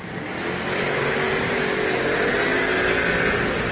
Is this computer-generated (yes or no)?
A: no